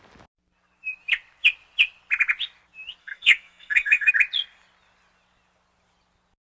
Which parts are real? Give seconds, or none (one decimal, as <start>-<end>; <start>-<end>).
0.0-3.0; 4.1-6.4